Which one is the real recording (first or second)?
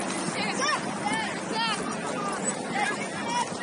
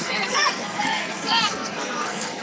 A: first